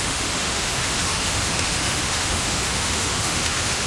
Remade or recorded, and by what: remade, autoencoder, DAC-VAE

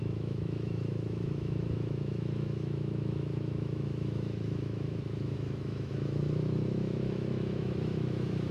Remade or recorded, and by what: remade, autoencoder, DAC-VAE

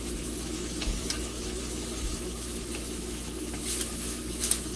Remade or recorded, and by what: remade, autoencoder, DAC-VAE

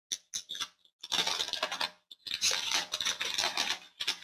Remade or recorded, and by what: recorded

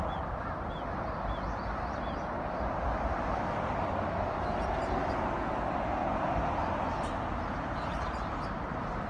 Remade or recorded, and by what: recorded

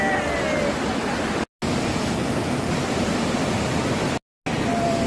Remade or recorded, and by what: recorded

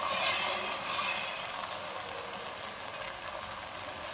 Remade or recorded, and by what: recorded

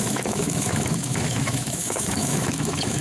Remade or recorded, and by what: remade, autoencoder, DAC-VAE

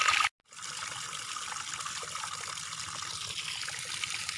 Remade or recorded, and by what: recorded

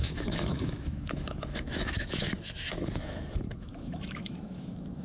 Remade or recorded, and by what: remade, autoencoder, DAC-VAE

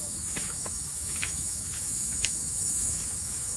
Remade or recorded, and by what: remade, autoencoder, DAC-VAE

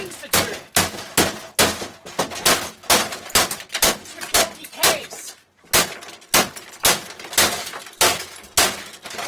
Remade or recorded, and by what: recorded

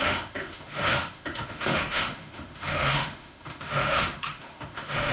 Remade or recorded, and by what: remade, autoencoder, DAC-VAE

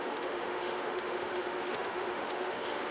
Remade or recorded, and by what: remade, autoencoder, DAC-VAE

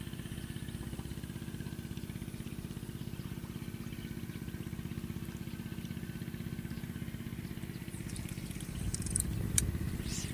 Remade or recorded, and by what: recorded